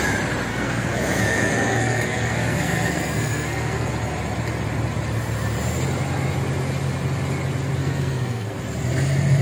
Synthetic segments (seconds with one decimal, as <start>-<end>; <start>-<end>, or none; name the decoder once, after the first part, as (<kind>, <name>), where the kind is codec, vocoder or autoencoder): 0.5-3.9 (codec, SNAC); 7.8-8.6